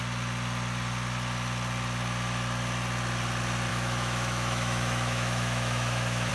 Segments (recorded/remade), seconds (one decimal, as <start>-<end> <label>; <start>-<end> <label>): 0.0-3.7 recorded; 3.7-6.3 remade